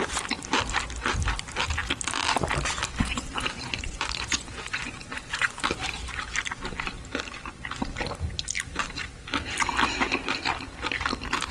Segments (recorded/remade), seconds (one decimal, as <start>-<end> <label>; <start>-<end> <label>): 0.0-3.0 recorded; 3.0-5.6 remade; 5.6-11.5 recorded